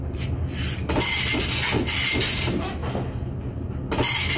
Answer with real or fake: real